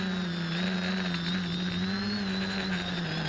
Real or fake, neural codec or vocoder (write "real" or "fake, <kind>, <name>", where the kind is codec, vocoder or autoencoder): real